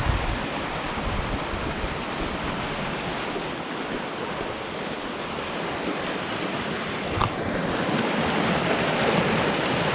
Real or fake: real